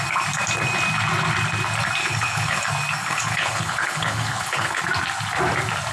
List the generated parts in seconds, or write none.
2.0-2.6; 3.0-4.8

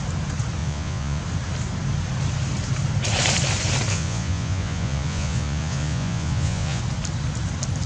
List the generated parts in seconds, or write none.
0.6-1.2; 3.9-6.8

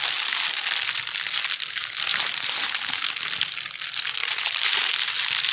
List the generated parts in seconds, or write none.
2.1-3.0; 4.2-4.8

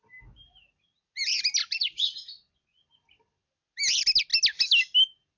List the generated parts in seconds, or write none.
1.6-2.8

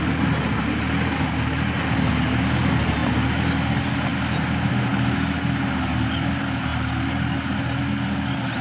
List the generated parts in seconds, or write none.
none

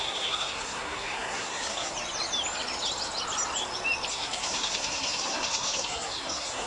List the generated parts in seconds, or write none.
0.0-1.9; 4.1-6.7

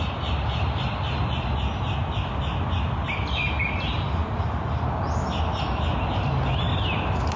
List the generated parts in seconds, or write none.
none